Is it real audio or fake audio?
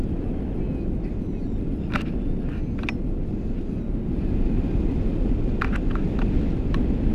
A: real